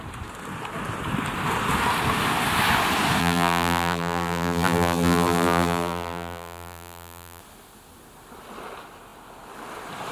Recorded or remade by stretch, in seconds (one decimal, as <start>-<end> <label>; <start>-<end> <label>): 0.0-3.2 recorded; 3.2-7.4 remade; 7.4-10.1 recorded